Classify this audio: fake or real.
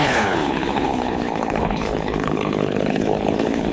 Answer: fake